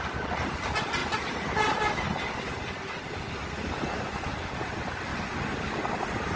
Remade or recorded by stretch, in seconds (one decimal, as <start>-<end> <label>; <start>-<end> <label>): 0.0-6.4 recorded